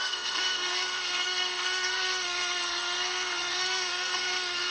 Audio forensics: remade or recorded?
remade